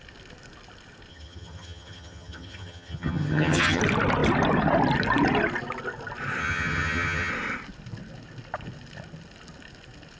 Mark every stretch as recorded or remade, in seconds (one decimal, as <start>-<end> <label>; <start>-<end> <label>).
0.0-1.1 recorded; 1.1-3.8 remade; 3.8-6.4 recorded; 6.4-7.3 remade; 7.3-10.2 recorded